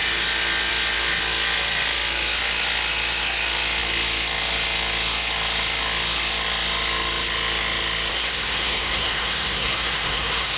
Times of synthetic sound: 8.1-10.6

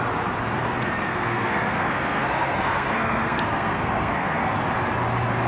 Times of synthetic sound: 1.1-4.4

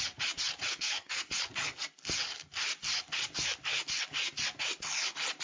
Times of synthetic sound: 0.7-1.2

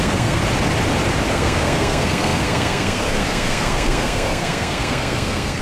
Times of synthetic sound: 0.0-0.4; 1.3-5.6

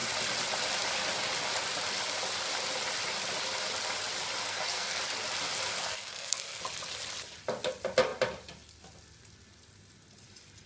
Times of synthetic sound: 4.4-5.0; 5.7-6.6

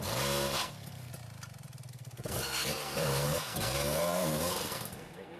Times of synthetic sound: 0.0-1.1; 1.9-5.4

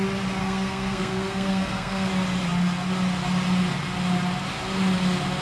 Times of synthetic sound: 0.4-2.1